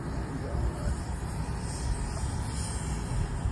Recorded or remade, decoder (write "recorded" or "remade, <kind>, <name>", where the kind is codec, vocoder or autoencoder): recorded